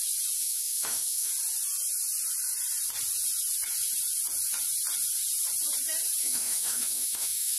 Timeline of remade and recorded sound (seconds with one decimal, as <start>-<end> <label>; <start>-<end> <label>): 0.0-0.4 recorded; 0.4-1.3 remade; 1.3-6.2 recorded; 6.2-7.6 remade